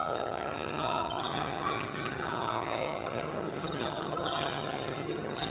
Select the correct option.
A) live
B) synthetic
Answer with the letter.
B